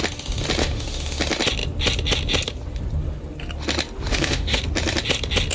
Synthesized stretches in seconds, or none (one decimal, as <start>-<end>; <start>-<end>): 0.6-1.2; 4.1-4.6